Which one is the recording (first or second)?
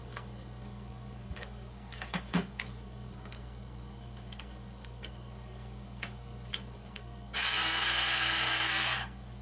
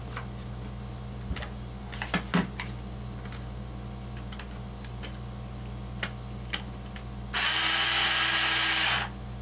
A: second